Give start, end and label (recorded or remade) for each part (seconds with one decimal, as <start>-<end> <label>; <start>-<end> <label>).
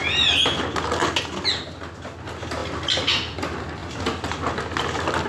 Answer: 0.0-5.3 recorded